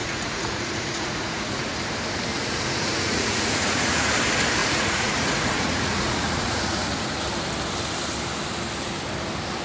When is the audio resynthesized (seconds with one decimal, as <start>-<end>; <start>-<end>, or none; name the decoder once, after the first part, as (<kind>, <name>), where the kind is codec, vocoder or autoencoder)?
0.0-1.7 (vocoder, Vocos); 2.3-4.1; 4.6-7.2